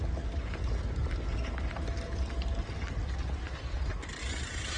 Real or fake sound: real